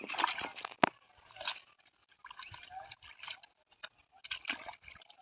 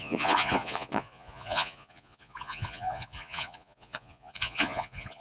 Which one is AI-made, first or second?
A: second